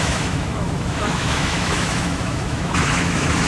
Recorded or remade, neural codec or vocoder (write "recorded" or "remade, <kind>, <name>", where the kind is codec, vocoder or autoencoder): remade, autoencoder, DAC-VAE